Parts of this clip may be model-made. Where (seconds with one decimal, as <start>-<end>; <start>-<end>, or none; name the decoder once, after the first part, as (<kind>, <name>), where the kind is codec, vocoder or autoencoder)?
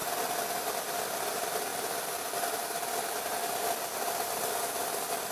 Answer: none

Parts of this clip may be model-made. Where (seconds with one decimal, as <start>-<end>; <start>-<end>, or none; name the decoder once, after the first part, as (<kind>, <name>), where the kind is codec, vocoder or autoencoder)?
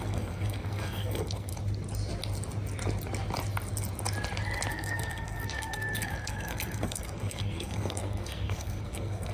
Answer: 0.0-1.5 (codec, SNAC); 4.7-9.3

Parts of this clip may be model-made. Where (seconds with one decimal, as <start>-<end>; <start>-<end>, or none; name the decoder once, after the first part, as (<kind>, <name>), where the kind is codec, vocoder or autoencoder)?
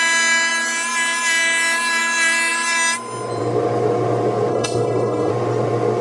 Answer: 4.5-5.3 (codec, HILCodec)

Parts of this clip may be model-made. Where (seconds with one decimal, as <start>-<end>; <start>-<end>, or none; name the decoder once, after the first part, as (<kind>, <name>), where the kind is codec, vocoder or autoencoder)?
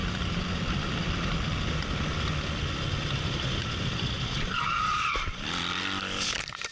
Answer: 0.0-1.9 (vocoder, BigVGAN v2); 3.6-5.8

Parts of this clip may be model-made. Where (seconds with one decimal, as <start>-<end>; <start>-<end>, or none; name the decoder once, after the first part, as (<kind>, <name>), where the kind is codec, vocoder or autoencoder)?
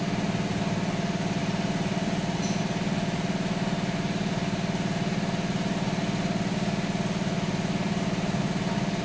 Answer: 1.4-2.6 (vocoder, BigVGAN v2)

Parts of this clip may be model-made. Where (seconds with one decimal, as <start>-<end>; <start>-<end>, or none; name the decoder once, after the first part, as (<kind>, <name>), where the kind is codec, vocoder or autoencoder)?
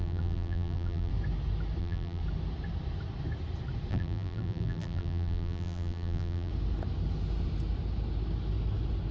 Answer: 0.0-1.1 (vocoder, BigVGAN v2); 1.8-2.2; 3.9-6.5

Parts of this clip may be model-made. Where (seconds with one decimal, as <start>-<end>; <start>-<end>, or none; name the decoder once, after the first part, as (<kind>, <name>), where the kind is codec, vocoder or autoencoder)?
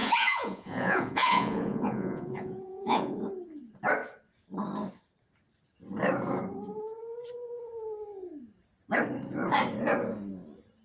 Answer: 0.0-3.2 (vocoder, Vocos)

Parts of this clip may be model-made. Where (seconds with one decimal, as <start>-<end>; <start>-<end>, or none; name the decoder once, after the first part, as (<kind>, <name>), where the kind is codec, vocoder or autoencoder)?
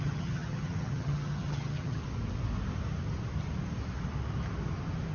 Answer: 0.0-2.0 (vocoder, HiFi-GAN)